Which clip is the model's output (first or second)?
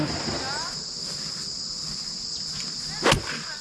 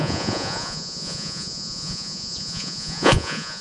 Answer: second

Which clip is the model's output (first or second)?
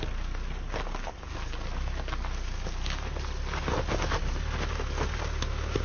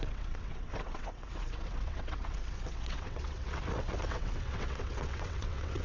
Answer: second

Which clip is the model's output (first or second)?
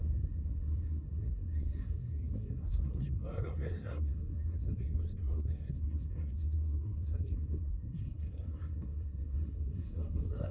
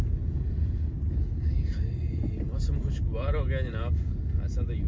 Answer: first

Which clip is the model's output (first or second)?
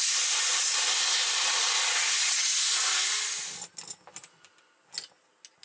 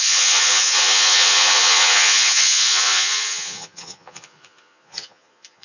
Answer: second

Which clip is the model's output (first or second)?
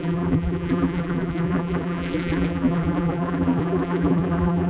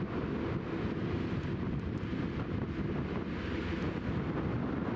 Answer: first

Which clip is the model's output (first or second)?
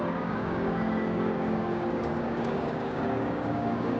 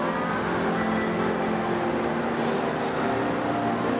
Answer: first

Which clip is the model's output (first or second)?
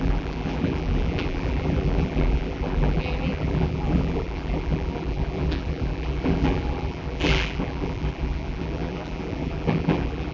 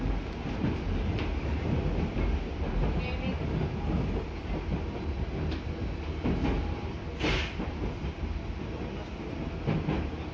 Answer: first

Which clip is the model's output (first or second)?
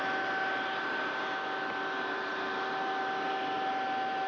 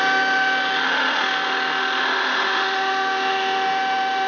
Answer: second